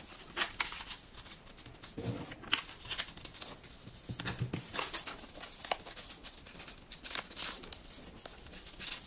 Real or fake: real